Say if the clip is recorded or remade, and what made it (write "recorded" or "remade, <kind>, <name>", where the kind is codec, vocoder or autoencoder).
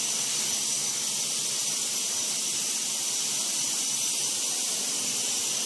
recorded